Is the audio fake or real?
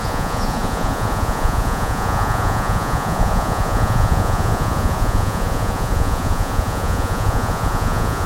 fake